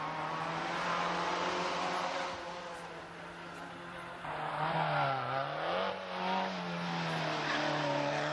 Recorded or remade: recorded